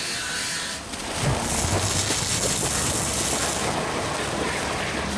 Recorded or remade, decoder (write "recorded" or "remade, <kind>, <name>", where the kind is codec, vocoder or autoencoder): recorded